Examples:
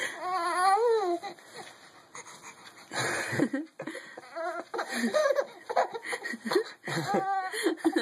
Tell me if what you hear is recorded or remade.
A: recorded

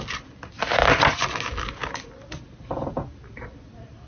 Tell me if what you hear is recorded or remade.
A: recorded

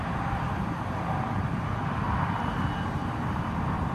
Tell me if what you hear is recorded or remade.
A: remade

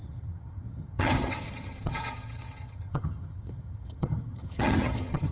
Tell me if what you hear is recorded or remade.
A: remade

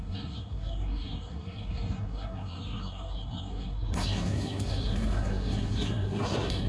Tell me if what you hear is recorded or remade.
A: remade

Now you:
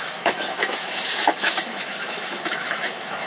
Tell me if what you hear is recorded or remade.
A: remade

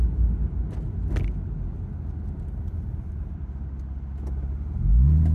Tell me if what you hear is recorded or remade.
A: recorded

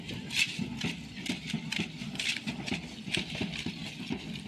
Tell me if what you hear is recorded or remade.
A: recorded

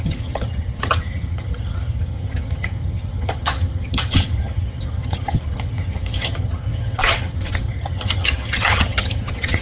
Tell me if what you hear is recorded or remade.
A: remade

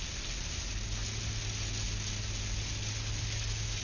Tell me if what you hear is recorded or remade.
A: recorded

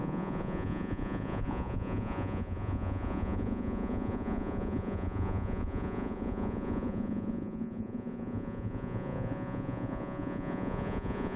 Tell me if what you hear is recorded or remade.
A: remade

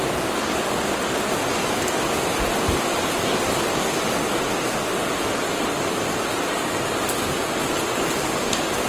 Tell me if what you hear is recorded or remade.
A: recorded